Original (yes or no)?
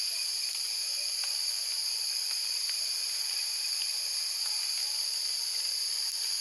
yes